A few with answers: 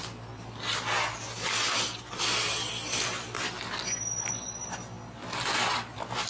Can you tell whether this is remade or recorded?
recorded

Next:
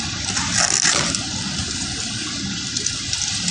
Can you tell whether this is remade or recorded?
recorded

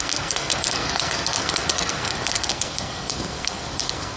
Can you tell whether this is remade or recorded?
remade